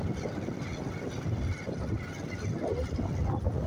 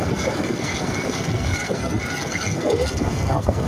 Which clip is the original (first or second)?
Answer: first